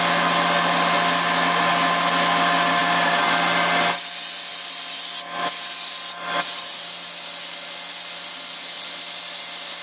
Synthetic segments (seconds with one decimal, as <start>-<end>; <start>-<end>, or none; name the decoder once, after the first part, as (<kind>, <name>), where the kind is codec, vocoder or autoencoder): none